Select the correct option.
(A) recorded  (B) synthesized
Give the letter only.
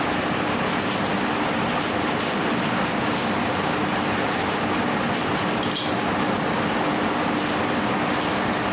A